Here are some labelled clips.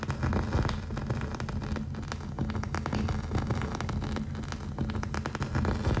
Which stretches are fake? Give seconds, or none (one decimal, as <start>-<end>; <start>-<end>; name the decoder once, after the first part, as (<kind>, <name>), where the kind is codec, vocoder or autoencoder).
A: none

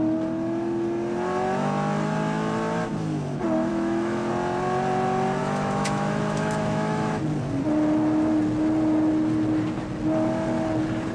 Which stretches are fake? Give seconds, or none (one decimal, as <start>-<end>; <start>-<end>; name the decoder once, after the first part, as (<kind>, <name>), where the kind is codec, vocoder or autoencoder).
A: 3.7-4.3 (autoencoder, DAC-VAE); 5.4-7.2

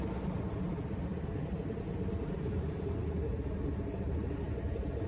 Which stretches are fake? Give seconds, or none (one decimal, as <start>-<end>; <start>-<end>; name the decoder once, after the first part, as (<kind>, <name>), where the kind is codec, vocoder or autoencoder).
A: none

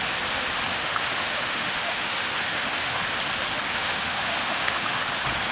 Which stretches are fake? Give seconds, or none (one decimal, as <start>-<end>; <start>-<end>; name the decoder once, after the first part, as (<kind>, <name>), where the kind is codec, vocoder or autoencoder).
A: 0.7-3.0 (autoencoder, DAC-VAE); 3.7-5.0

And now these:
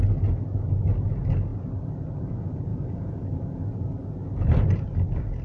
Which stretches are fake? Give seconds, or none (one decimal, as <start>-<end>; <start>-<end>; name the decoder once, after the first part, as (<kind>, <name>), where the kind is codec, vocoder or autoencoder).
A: none

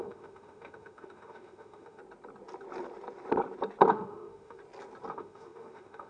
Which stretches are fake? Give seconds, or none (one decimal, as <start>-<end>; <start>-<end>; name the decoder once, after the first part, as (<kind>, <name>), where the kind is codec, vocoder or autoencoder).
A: 0.0-2.0 (autoencoder, DAC-VAE); 3.9-4.6; 5.1-6.1